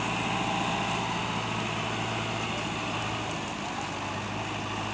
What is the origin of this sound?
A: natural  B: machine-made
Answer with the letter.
A